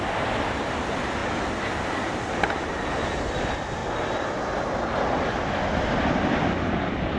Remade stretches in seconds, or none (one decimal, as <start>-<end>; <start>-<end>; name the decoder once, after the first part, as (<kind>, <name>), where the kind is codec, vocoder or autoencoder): none